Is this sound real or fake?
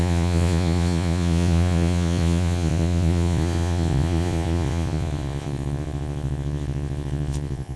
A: fake